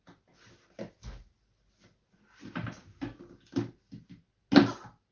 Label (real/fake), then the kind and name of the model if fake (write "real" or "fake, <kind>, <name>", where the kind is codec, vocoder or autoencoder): real